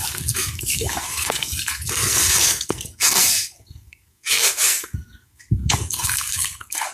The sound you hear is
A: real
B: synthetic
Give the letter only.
B